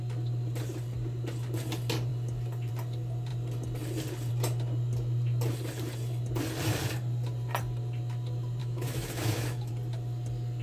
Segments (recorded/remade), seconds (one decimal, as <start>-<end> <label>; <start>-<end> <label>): 0.0-8.6 recorded; 8.6-9.7 remade; 9.7-10.6 recorded